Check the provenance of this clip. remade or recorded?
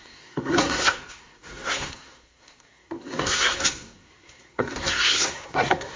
remade